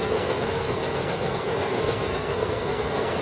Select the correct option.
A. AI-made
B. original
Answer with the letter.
A